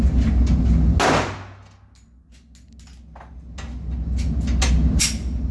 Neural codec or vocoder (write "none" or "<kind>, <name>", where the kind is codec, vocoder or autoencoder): none